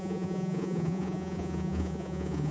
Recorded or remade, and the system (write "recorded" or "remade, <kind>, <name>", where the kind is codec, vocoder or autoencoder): remade, vocoder, Vocos